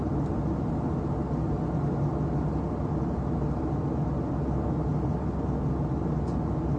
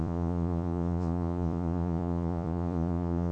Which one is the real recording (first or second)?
first